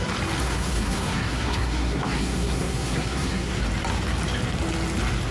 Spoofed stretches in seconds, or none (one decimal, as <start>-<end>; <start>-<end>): 0.4-3.6